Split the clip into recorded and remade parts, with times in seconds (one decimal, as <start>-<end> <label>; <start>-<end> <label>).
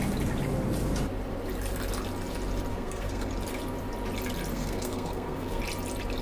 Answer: 0.0-2.7 recorded; 2.7-3.3 remade; 3.3-4.5 recorded; 4.5-5.6 remade; 5.6-6.2 recorded